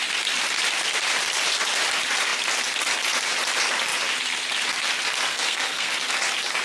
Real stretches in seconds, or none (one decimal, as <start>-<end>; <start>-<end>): 0.0-5.3; 5.9-6.6